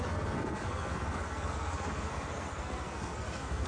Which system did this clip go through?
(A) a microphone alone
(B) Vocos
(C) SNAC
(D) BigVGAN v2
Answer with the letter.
C